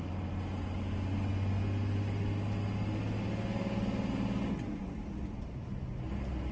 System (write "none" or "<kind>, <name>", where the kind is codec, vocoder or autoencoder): none